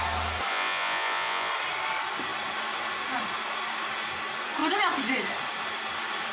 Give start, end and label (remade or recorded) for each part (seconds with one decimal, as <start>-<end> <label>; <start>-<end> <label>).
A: 0.0-0.5 recorded; 0.5-1.5 remade; 1.5-6.3 recorded